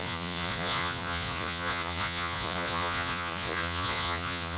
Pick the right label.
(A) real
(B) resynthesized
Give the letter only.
B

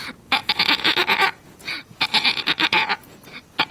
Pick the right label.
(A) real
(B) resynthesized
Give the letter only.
B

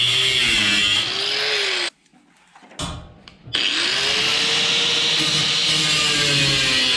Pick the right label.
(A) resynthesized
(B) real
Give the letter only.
B